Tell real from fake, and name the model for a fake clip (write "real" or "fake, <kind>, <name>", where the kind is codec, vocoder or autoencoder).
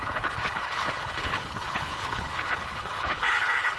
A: fake, codec, HILCodec